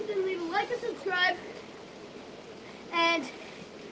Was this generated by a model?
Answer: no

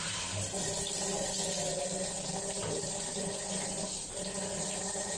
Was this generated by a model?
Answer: no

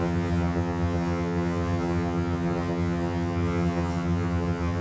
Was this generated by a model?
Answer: yes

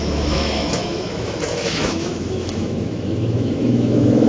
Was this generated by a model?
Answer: yes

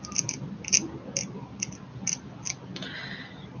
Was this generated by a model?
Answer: no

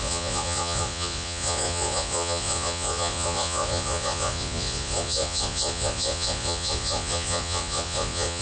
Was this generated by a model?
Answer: yes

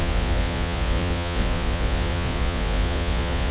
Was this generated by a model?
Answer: yes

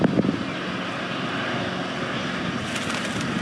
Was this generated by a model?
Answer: no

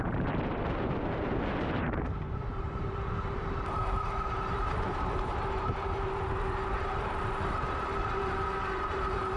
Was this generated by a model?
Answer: yes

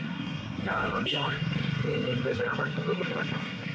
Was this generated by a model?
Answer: yes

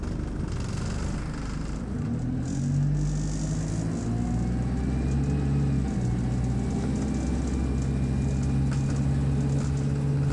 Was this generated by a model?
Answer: no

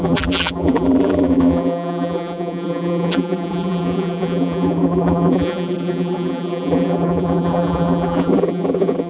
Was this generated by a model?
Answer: yes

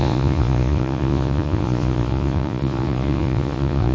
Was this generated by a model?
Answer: yes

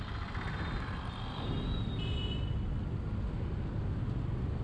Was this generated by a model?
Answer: no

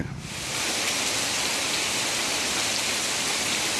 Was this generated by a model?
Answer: no